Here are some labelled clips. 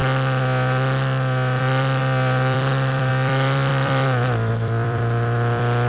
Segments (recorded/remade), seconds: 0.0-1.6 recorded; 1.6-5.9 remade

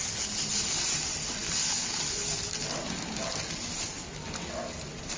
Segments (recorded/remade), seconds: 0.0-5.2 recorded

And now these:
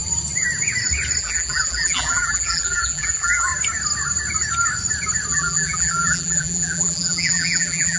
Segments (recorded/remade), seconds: 0.0-1.2 recorded; 1.2-3.5 remade; 3.5-5.3 recorded; 5.3-8.0 remade

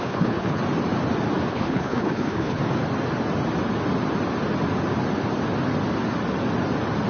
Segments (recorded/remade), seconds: 0.0-0.6 remade; 0.6-1.5 recorded; 1.5-2.6 remade; 2.6-7.1 recorded

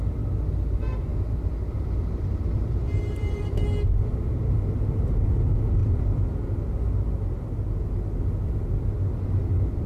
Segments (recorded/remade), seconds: 0.0-1.1 recorded; 1.1-3.6 remade; 3.6-9.9 recorded